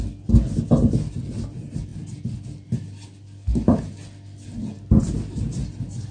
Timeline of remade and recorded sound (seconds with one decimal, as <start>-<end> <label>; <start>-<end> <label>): 0.0-6.1 recorded